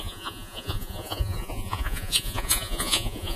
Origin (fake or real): fake